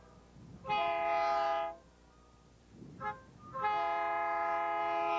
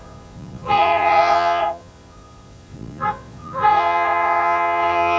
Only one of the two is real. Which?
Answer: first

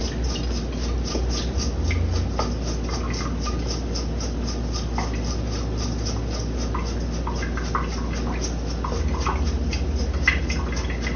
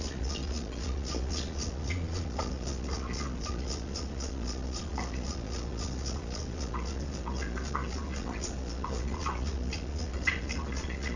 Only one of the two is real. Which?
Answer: first